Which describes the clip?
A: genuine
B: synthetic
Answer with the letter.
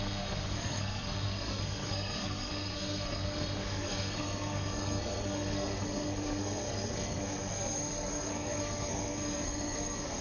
B